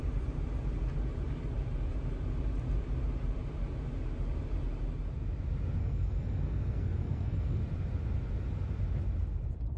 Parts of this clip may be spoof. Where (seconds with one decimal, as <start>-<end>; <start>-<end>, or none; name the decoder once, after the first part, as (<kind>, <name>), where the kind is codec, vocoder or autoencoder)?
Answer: 5.8-7.6 (codec, SNAC)